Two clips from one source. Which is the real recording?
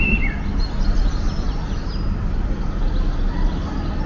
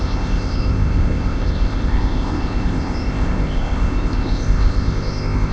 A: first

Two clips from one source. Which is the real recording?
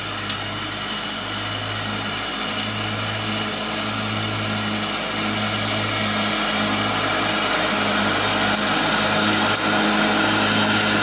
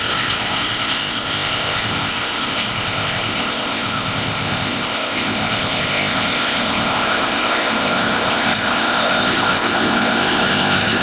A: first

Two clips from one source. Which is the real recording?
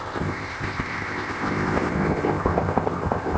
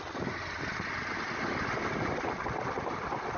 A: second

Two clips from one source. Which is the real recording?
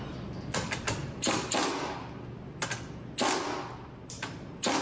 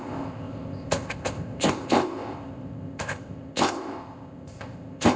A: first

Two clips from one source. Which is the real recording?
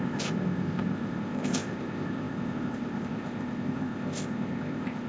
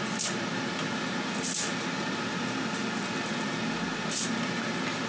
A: second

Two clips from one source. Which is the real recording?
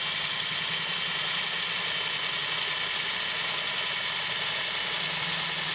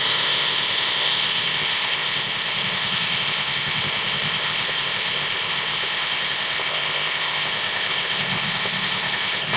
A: first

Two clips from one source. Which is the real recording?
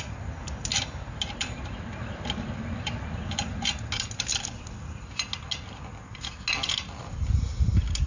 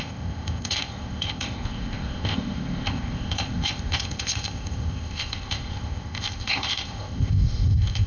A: first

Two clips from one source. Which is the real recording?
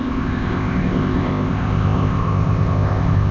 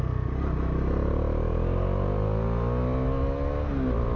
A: second